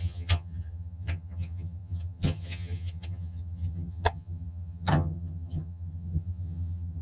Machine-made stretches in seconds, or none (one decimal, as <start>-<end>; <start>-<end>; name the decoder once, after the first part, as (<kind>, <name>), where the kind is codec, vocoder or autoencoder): 0.0-7.0 (vocoder, HiFi-GAN)